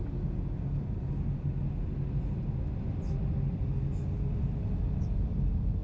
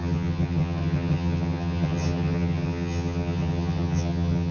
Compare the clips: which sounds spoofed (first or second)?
second